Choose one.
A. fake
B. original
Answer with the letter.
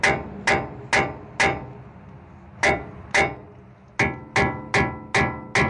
B